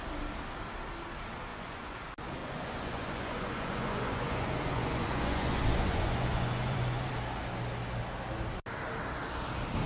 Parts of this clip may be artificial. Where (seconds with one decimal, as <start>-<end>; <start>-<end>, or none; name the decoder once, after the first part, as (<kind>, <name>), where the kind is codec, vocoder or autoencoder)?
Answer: 1.5-2.0 (vocoder, Vocos); 2.4-7.1